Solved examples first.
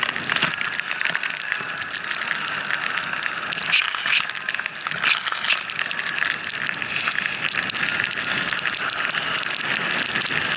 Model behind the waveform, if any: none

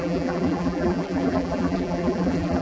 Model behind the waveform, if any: vocoder, BigVGAN v2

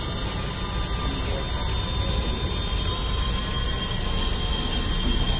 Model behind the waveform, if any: none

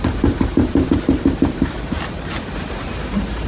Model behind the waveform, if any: vocoder, BigVGAN v2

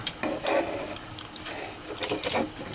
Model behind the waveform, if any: none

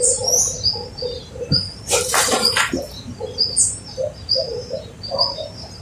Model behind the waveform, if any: vocoder, BigVGAN v2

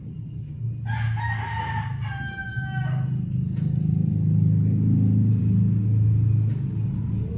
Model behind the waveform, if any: none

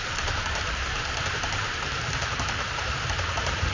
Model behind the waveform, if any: vocoder, BigVGAN v2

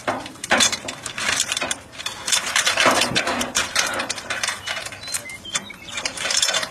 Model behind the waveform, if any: vocoder, BigVGAN v2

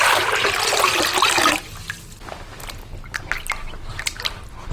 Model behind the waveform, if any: none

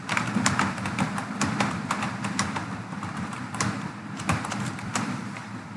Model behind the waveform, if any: vocoder, BigVGAN v2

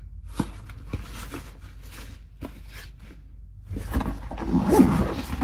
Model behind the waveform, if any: none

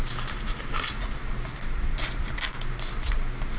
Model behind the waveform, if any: vocoder, BigVGAN v2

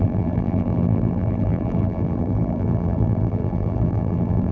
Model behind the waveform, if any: vocoder, BigVGAN v2